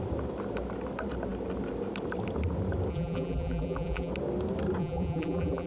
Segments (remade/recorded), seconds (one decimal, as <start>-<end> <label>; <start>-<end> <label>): 0.0-2.9 recorded; 2.9-4.1 remade; 4.1-4.8 recorded; 4.8-5.7 remade